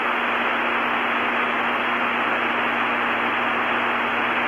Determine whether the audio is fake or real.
real